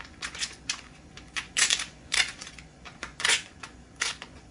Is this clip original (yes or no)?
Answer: no